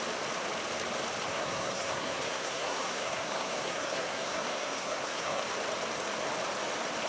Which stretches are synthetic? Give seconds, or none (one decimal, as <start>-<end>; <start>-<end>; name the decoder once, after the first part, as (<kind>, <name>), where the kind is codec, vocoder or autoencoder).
1.3-5.4 (codec, SNAC)